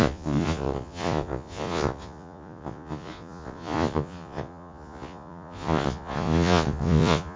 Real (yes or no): no